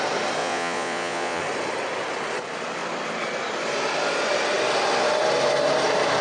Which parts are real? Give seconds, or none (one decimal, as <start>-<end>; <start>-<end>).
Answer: 0.0-0.4; 1.4-6.2